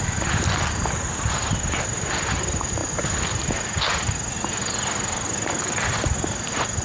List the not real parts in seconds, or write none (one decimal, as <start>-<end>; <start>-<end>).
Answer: none